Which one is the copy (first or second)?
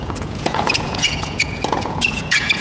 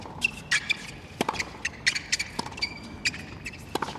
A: first